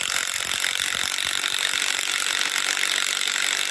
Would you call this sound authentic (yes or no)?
yes